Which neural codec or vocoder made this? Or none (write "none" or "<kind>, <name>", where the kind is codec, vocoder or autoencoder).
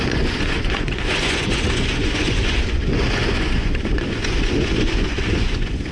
vocoder, Vocos